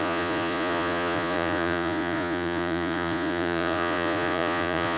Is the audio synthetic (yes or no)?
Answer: yes